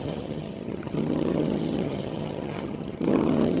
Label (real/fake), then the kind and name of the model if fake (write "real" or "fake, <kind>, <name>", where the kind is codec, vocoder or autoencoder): fake, vocoder, HiFi-GAN